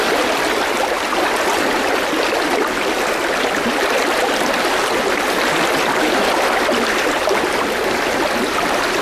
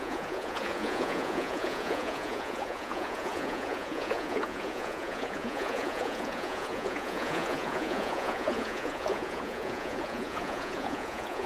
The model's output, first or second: second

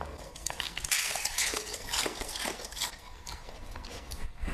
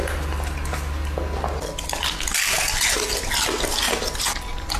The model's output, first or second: first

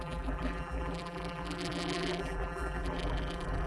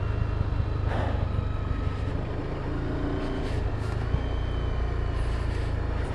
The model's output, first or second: first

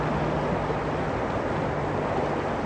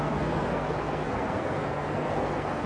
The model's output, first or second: second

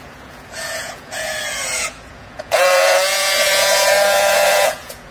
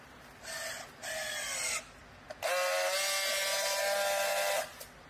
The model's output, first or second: first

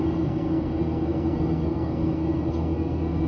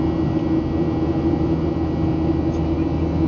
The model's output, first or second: first